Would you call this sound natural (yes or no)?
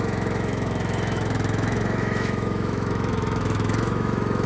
no